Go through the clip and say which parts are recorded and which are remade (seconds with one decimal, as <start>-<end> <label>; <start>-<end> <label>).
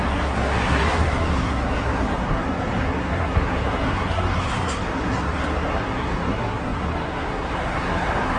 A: 0.0-8.4 remade